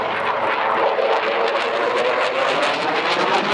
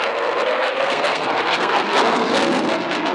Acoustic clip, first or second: first